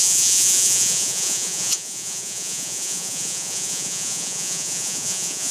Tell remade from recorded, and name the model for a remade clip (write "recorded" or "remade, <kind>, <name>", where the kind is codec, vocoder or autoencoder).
remade, vocoder, Vocos